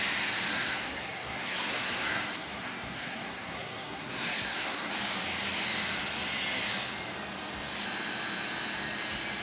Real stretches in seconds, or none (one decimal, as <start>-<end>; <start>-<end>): 0.0-0.5; 4.9-9.4